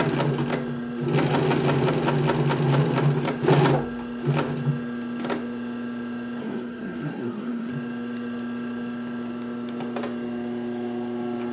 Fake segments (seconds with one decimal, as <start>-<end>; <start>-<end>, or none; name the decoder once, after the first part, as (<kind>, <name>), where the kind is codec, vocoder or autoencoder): 6.4-7.7 (codec, SNAC)